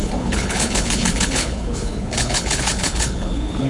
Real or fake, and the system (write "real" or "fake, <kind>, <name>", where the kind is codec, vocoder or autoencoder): fake, codec, HILCodec